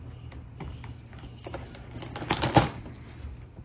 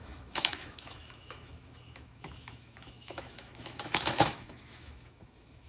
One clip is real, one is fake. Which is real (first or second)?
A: first